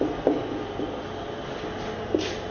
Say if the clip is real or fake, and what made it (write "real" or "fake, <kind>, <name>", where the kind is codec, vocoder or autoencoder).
real